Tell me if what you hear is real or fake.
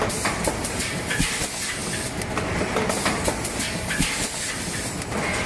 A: real